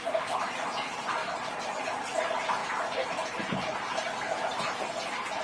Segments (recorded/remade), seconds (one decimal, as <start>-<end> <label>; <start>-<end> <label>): 0.0-5.4 recorded